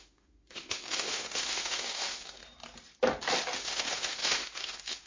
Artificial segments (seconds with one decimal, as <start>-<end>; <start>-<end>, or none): 0.0-2.4; 3.6-5.1